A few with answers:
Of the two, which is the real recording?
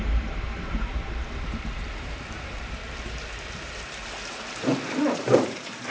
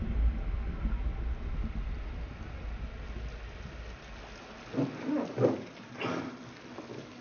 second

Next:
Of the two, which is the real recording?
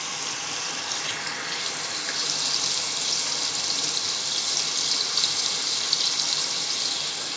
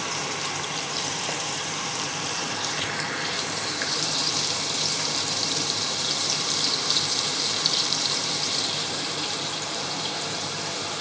first